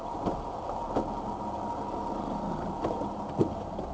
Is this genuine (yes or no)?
yes